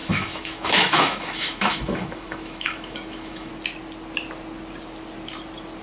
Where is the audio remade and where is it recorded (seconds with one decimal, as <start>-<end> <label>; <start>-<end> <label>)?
0.0-3.5 remade; 3.5-5.8 recorded